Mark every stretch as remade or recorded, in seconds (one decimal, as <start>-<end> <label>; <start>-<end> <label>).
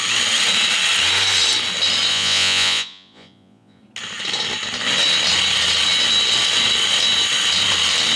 0.0-2.1 recorded; 2.1-3.8 remade; 3.8-8.2 recorded